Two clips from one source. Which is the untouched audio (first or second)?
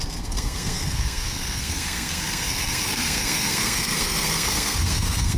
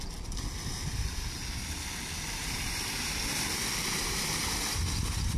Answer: second